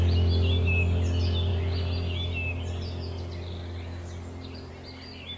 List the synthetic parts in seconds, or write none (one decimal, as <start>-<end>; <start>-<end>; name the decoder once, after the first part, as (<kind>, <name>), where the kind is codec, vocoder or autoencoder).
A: none